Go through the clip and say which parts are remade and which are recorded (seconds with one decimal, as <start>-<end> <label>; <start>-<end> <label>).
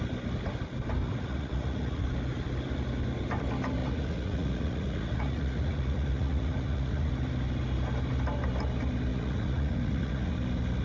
0.0-1.0 recorded; 1.0-2.0 remade; 2.0-3.8 recorded; 3.8-7.1 remade; 7.1-9.1 recorded; 9.1-10.3 remade; 10.3-10.8 recorded